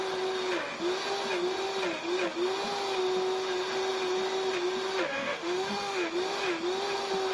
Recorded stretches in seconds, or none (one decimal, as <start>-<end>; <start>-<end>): 0.0-5.1; 6.1-7.3